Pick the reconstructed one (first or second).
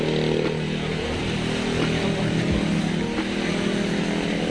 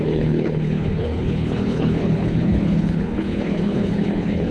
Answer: second